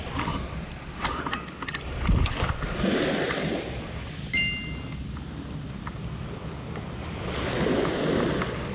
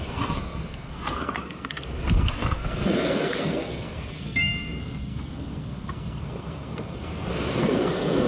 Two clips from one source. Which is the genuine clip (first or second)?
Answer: first